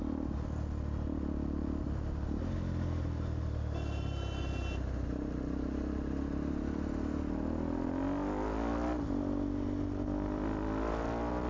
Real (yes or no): yes